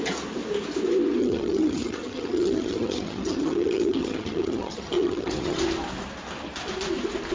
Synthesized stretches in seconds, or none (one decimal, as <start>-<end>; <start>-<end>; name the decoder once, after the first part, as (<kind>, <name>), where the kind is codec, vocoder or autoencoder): 1.2-5.6 (vocoder, HiFi-GAN)

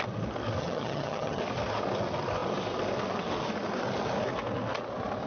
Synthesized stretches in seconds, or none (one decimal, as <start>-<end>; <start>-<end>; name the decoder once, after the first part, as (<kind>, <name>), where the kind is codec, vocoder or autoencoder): 0.6-1.4 (vocoder, HiFi-GAN)

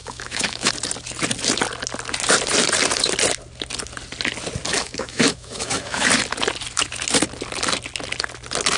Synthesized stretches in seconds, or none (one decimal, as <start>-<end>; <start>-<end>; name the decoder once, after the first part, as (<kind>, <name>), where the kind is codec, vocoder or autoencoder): 0.0-0.7 (autoencoder, DAC-VAE); 4.7-6.1

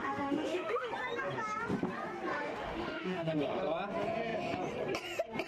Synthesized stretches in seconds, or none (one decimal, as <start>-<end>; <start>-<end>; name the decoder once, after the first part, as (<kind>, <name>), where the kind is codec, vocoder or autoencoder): 0.0-0.9 (autoencoder, DAC-VAE); 2.3-3.6

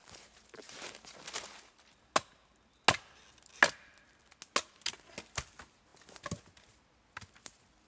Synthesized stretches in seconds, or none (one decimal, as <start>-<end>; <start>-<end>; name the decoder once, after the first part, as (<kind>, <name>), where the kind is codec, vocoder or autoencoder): 0.0-1.8 (vocoder, BigVGAN v2)